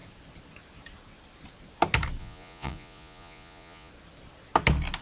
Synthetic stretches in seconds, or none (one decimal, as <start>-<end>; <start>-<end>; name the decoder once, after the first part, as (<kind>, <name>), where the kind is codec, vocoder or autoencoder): 2.2-3.9 (vocoder, Vocos)